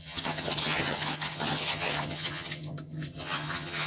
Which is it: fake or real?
fake